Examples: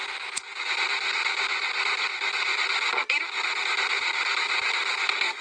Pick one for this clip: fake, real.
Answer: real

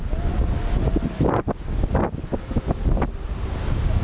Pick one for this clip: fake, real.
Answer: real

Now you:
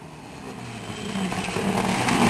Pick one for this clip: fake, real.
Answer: real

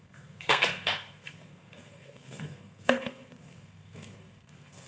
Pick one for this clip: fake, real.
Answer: fake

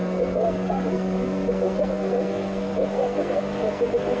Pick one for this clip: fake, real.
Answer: fake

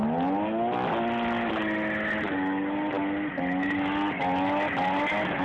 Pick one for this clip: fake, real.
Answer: real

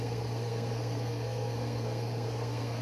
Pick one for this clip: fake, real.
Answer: fake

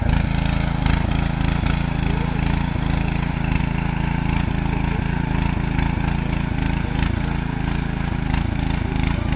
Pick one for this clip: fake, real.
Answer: real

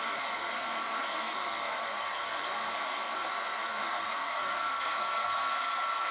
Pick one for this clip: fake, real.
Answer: fake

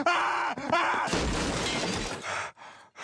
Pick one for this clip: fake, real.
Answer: real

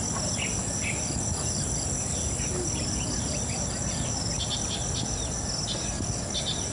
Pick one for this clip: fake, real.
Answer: real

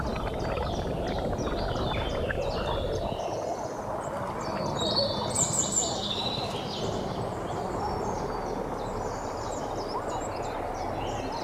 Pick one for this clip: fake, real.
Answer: real